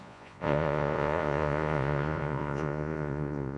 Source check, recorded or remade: remade